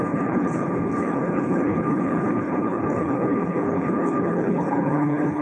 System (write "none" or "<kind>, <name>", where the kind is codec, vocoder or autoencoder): codec, HILCodec